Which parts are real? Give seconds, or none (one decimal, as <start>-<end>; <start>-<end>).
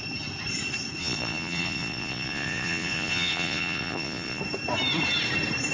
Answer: 0.0-1.0; 4.4-5.7